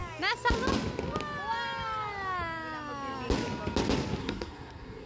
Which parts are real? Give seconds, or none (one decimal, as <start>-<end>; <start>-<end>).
0.0-4.2